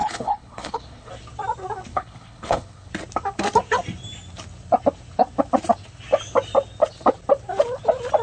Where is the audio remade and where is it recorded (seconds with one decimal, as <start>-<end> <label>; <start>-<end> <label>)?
0.0-1.1 remade; 1.1-1.9 recorded; 1.9-2.9 remade; 2.9-8.2 recorded